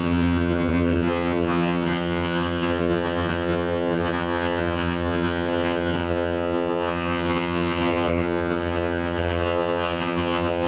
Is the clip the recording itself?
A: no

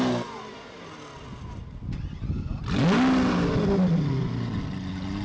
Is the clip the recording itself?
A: yes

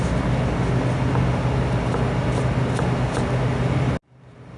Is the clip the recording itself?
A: yes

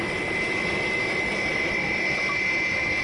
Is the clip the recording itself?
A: yes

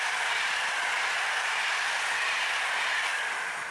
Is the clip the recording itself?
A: no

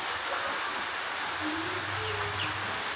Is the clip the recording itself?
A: yes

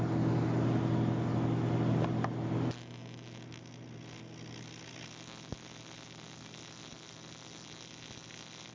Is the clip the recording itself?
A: yes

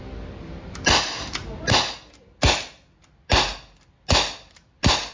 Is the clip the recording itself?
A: yes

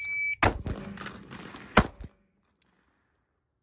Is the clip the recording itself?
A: yes